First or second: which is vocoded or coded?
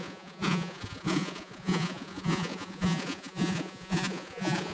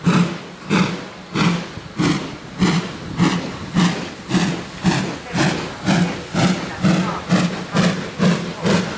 first